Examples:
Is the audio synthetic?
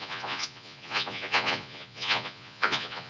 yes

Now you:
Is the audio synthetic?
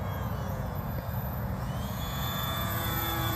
yes